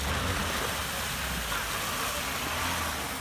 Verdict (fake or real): real